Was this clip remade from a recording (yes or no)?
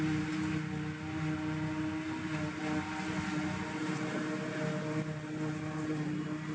no